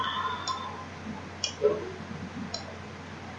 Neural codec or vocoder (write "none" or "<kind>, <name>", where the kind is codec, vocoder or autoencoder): none